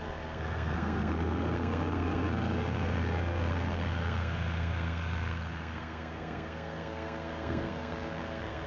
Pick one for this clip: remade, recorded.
remade